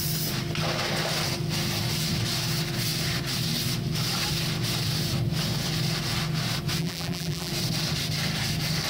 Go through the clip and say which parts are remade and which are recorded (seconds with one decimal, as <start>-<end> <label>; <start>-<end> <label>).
0.0-6.8 recorded; 6.8-7.5 remade; 7.5-8.9 recorded